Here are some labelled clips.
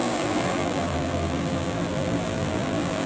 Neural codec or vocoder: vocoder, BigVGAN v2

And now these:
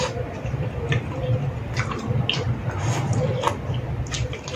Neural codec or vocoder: none